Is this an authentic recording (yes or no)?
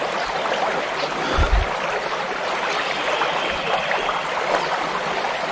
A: yes